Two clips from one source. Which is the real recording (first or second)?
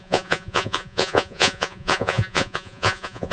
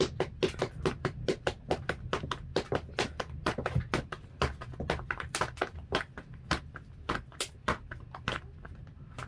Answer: second